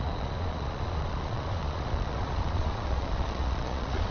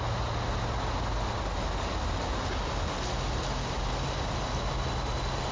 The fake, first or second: first